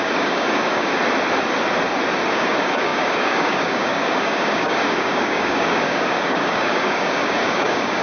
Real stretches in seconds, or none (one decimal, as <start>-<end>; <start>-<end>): 0.9-2.3